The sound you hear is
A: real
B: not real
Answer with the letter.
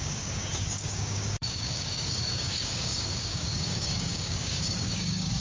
B